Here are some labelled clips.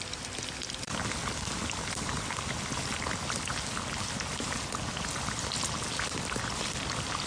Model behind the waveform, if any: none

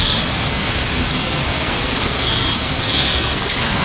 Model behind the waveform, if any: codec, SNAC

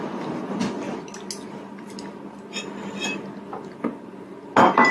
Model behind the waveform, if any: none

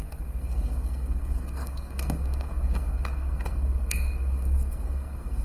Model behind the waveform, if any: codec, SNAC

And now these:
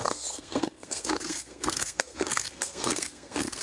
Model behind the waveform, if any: codec, SNAC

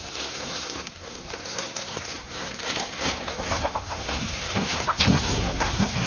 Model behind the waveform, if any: codec, SNAC